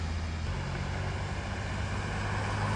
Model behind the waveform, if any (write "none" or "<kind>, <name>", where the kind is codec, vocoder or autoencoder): none